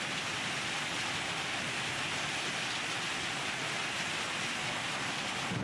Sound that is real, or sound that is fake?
real